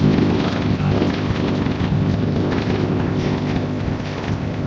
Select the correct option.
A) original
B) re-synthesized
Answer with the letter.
B